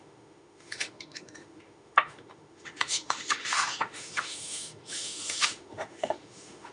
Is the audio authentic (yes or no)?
no